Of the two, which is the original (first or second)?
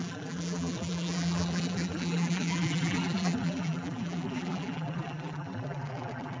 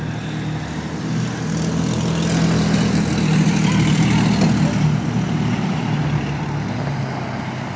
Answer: second